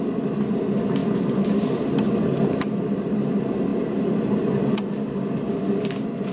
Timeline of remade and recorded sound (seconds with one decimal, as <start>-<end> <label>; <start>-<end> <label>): 0.0-6.3 recorded